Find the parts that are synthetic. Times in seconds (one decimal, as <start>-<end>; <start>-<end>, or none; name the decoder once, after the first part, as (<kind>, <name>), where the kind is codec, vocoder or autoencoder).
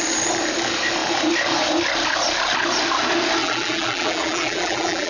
3.4-5.1 (vocoder, BigVGAN v2)